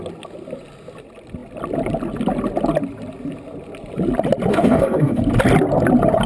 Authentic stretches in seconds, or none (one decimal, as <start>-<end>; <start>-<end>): 0.0-4.5; 5.2-6.3